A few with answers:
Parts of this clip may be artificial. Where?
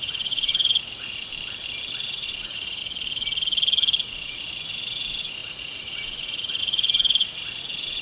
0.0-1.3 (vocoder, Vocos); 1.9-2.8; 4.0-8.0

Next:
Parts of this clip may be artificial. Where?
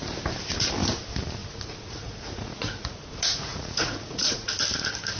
1.4-4.5 (vocoder, Vocos)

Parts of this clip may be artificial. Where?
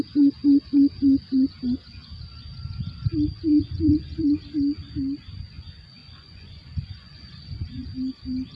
3.5-4.4 (vocoder, Vocos); 6.0-7.9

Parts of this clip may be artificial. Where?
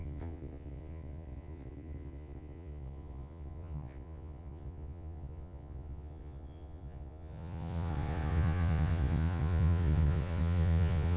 0.0-11.2 (vocoder, Vocos)